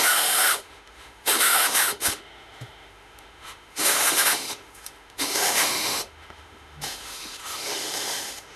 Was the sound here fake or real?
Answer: fake